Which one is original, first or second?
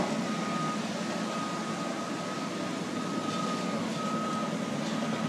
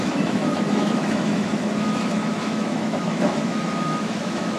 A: first